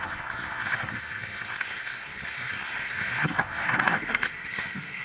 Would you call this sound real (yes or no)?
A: no